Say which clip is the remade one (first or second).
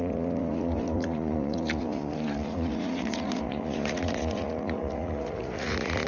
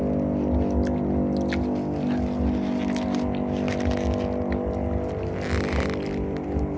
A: first